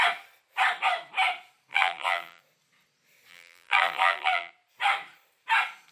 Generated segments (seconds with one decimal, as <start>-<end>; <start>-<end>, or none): 1.7-2.4; 3.3-4.5